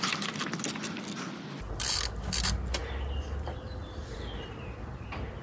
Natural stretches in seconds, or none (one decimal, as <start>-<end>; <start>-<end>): 0.0-5.4